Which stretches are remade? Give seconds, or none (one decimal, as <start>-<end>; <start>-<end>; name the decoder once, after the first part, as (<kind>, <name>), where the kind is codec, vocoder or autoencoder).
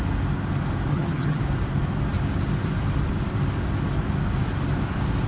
0.9-1.4 (vocoder, HiFi-GAN)